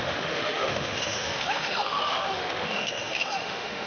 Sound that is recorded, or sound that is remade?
remade